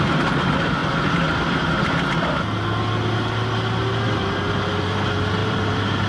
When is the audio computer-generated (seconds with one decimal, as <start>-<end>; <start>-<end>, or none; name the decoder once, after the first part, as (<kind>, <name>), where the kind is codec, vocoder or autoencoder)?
5.4-6.1 (vocoder, BigVGAN v2)